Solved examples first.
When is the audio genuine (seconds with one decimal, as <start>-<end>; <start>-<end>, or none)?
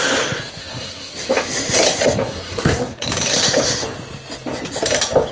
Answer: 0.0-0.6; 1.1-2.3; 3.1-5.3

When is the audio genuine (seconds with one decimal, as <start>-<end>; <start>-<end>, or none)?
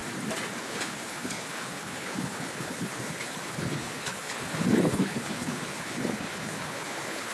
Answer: 0.0-0.6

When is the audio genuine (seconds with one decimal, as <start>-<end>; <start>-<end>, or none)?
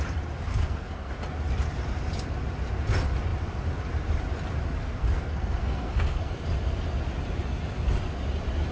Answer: 0.0-0.5; 1.1-4.8; 6.3-8.7